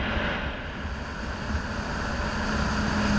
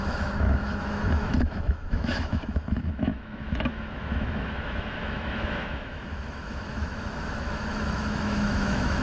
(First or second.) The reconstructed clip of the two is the second